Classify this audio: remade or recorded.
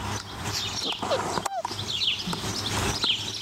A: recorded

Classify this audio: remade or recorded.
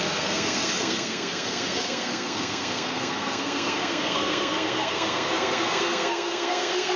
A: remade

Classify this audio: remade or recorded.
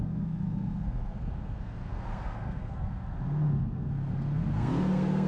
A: remade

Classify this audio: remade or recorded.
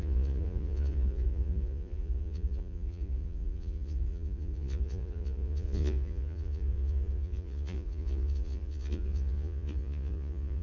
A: remade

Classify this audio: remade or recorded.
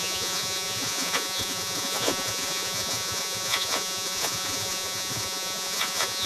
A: remade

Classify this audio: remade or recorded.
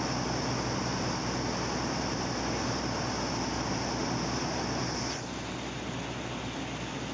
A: recorded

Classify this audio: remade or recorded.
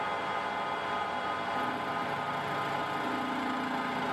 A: recorded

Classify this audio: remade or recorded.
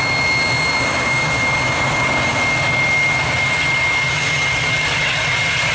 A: recorded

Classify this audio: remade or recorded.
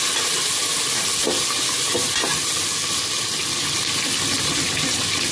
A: recorded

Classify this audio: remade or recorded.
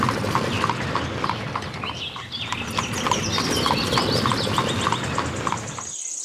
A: recorded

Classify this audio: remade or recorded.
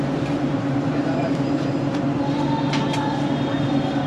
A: remade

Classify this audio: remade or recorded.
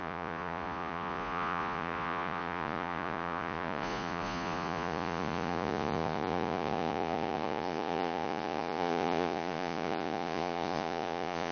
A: remade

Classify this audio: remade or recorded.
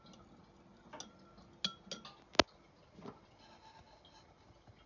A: recorded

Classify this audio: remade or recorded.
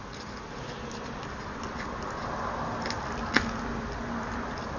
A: recorded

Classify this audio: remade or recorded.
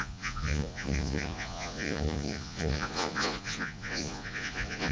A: remade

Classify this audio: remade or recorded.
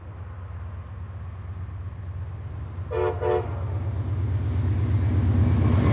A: recorded